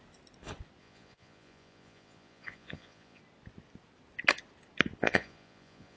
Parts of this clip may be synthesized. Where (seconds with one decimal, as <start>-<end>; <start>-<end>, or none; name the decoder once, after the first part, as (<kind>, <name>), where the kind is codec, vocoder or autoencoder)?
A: 0.8-3.2 (vocoder, Vocos); 5.0-6.0